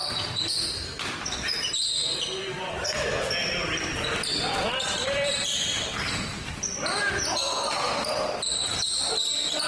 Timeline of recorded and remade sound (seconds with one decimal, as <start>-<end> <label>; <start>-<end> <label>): 0.0-1.1 remade; 1.1-3.4 recorded; 3.4-7.0 remade; 7.0-9.7 recorded